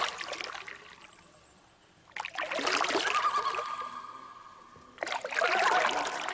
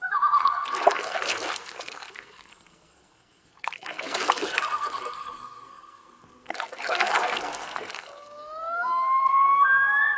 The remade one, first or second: second